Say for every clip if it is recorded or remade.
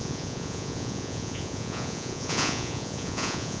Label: remade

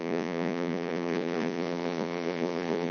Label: remade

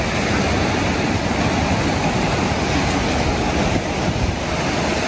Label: recorded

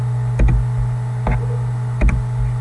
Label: recorded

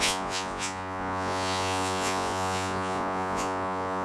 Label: remade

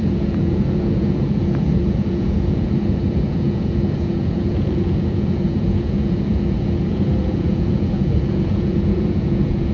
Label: remade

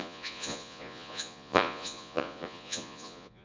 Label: remade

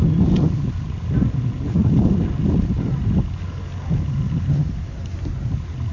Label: recorded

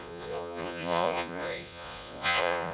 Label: remade